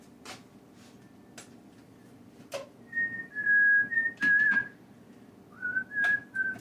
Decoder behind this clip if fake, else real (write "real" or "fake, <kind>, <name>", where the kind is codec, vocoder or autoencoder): real